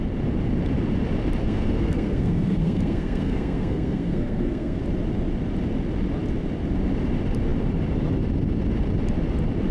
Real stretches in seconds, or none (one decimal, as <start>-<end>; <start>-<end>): 0.0-1.4; 4.8-9.7